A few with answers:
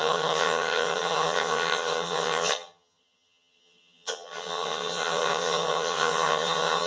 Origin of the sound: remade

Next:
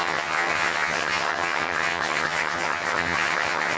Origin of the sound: remade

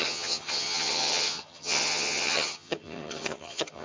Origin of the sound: remade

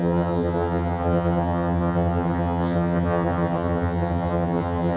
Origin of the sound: remade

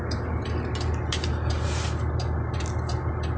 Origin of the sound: recorded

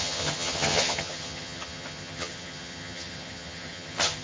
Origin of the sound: remade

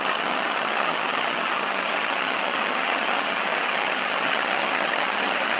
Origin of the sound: remade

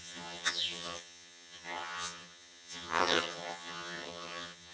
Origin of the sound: remade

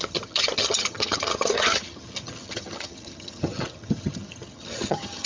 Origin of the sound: remade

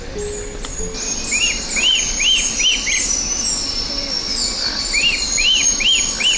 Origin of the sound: recorded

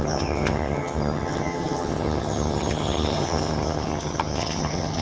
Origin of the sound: remade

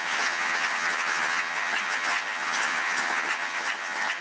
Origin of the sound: remade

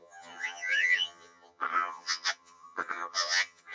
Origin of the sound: remade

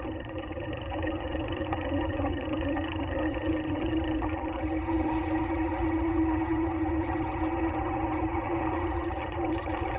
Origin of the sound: remade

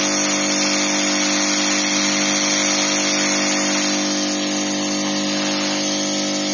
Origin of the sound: recorded